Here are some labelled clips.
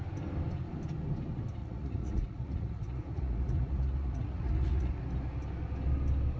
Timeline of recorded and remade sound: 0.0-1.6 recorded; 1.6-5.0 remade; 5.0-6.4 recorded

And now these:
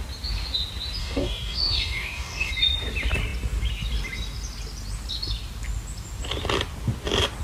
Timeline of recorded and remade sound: 0.0-1.0 recorded; 1.0-2.5 remade; 2.5-7.4 recorded

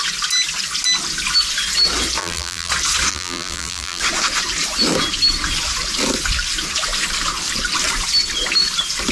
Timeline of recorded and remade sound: 0.0-2.2 recorded; 2.2-2.7 remade; 2.7-3.1 recorded; 3.1-4.0 remade; 4.0-9.1 recorded

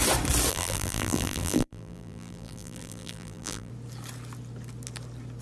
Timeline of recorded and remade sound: 0.0-0.5 recorded; 0.5-3.7 remade; 3.7-5.4 recorded

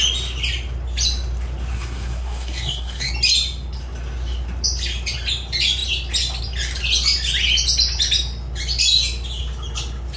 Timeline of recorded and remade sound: 0.0-1.7 recorded; 1.7-3.1 remade; 3.1-10.2 recorded